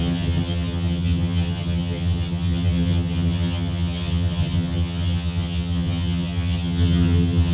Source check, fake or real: fake